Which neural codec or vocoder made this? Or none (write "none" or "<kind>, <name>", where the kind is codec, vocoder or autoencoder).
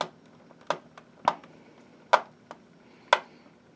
none